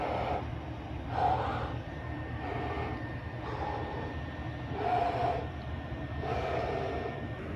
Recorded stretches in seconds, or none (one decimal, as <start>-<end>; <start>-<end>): 0.0-6.1; 6.7-7.6